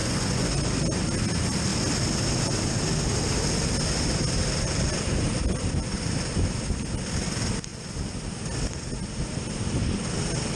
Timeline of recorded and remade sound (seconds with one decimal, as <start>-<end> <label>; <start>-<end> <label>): 0.0-0.7 remade; 0.7-10.6 recorded

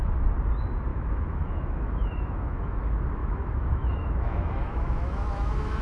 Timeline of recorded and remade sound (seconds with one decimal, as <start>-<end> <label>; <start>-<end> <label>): 0.0-0.9 recorded; 0.9-2.8 remade; 2.8-3.2 recorded; 3.2-5.8 remade